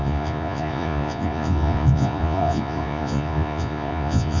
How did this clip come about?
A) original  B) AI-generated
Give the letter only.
B